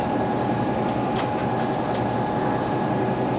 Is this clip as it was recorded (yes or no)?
yes